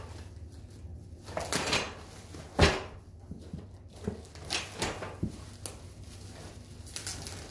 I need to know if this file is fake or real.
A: real